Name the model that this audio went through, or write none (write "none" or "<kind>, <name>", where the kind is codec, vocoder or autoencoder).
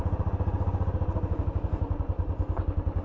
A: none